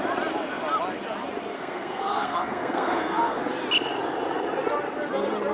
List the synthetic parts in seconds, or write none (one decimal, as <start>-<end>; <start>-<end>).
1.5-3.4

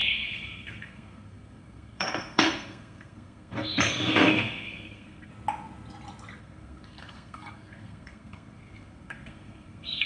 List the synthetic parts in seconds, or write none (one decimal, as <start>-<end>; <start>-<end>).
0.0-5.3; 6.4-10.1

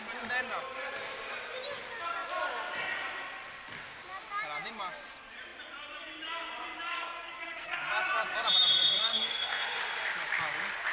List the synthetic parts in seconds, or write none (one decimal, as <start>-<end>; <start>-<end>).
6.9-7.8; 9.1-9.8

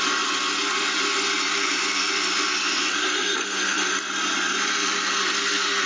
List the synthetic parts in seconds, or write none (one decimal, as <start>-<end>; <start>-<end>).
3.0-3.9; 5.2-5.9